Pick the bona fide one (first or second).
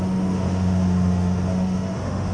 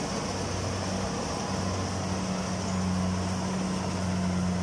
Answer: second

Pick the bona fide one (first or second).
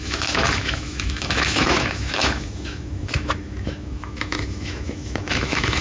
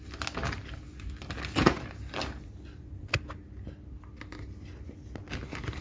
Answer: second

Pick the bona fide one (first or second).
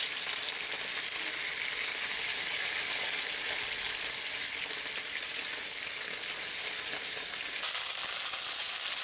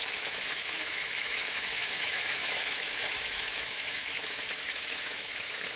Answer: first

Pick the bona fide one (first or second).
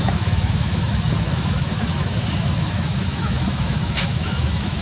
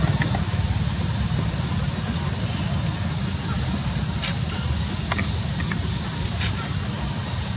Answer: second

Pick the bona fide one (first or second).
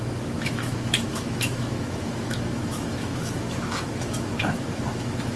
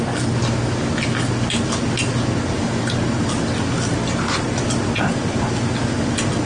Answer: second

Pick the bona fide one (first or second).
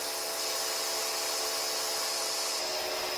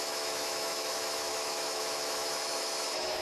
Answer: first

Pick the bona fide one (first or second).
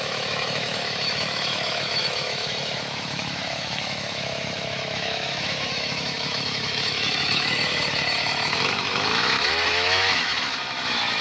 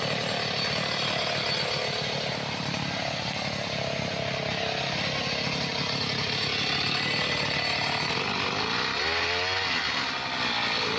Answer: second